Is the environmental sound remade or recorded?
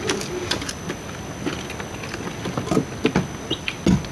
recorded